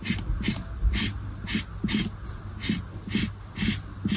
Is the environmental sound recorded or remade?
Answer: recorded